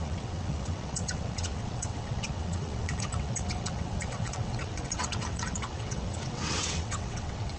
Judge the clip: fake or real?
fake